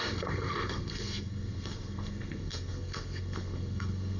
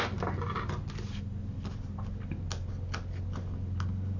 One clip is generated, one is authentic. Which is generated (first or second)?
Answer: first